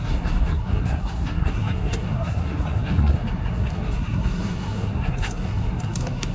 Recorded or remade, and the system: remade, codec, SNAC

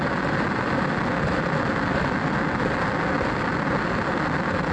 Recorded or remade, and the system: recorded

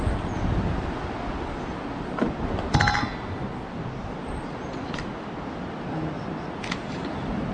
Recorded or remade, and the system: recorded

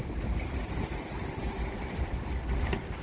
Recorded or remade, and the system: recorded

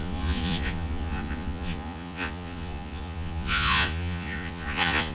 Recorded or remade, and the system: remade, vocoder, Vocos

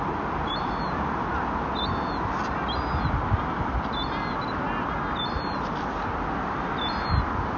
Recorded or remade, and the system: recorded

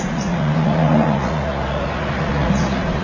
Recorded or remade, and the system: remade, vocoder, Vocos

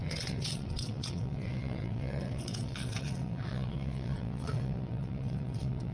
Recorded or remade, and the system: remade, vocoder, WaveNeXt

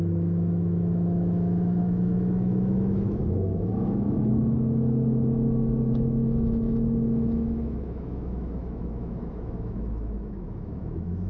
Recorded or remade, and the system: remade, autoencoder, DAC-VAE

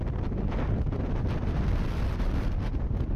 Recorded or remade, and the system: recorded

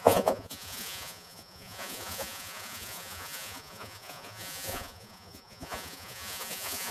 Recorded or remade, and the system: remade, vocoder, Vocos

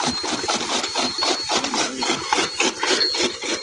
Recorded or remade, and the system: recorded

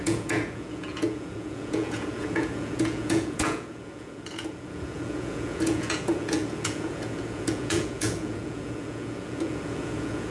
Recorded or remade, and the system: remade, vocoder, Vocos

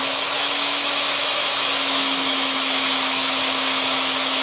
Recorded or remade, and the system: remade, autoencoder, DAC-VAE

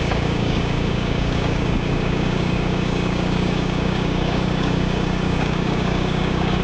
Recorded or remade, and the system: remade, codec, DAC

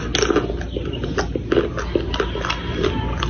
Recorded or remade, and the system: recorded